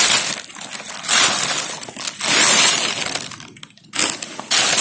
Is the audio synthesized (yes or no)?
no